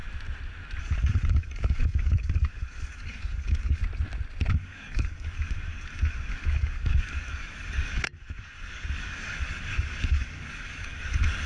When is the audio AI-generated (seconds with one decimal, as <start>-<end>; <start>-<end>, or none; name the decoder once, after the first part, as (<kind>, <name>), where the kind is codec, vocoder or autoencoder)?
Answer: 0.8-3.8 (codec, DAC); 4.5-11.5